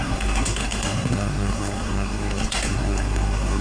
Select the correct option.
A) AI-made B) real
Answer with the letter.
A